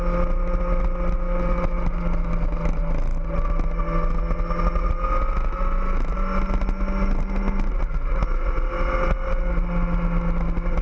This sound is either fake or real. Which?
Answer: real